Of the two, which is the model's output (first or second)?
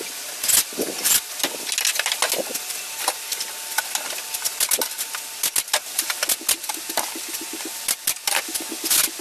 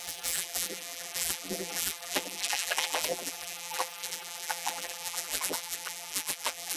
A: second